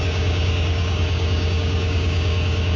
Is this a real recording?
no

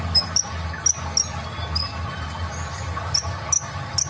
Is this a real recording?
yes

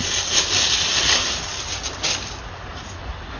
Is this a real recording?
yes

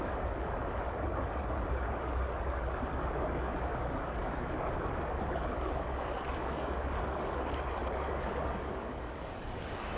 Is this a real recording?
no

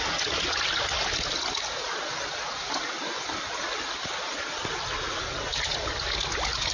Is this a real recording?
yes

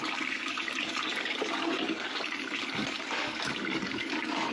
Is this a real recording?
no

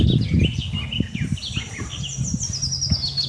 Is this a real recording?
yes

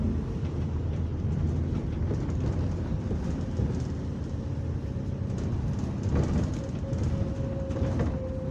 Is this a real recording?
yes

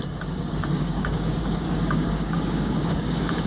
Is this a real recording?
no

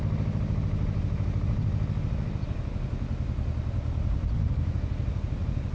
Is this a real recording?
yes